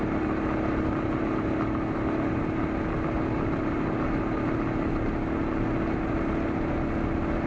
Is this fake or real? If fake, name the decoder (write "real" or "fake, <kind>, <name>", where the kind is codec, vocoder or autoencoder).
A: real